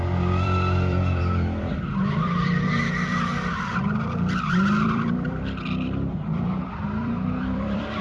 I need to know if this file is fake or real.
fake